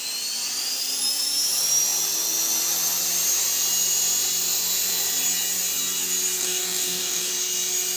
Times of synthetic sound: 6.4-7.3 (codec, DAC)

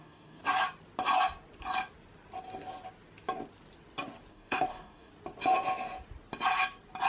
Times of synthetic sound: 0.0-0.4 (codec, DAC); 4.3-5.1